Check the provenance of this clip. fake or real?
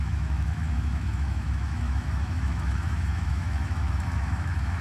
fake